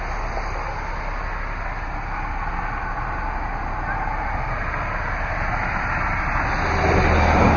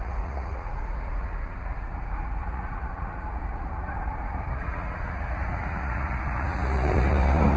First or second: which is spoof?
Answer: second